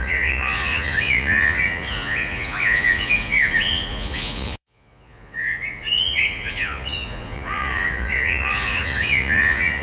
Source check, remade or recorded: remade